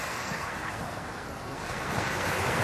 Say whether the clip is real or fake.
fake